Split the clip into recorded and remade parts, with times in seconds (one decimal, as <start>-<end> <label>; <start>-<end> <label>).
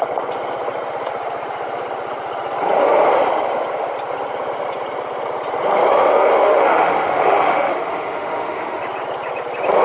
0.0-6.4 recorded; 6.4-8.8 remade; 8.8-9.8 recorded